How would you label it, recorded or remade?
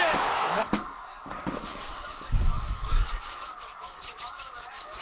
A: remade